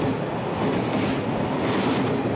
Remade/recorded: recorded